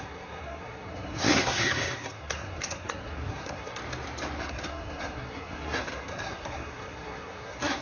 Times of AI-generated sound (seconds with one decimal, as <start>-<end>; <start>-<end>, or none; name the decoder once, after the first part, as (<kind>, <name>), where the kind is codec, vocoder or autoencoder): 0.0-3.8 (codec, SNAC); 4.4-7.8